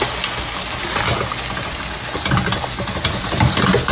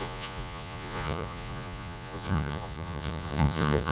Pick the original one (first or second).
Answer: first